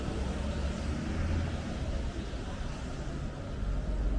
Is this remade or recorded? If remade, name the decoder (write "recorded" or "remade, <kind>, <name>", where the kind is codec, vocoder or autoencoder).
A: recorded